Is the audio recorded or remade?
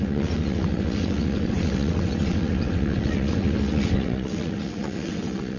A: remade